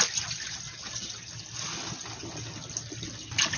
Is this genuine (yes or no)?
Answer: yes